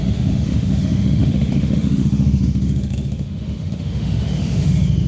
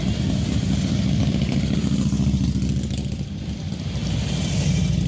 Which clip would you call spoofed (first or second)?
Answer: first